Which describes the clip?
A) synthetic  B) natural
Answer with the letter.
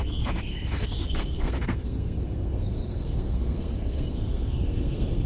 A